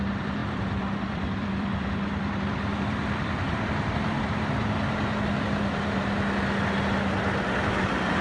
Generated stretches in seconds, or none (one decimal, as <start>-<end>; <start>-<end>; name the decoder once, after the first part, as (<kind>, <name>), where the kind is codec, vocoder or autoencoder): 0.0-6.0 (vocoder, BigVGAN v2); 7.6-8.2